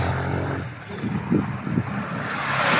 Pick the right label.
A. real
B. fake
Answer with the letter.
A